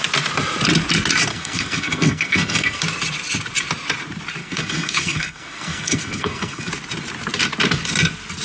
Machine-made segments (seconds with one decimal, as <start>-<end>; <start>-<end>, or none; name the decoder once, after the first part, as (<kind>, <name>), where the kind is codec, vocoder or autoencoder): 1.3-2.8 (codec, SNAC); 4.4-6.7